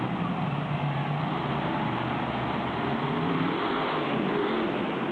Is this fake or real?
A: real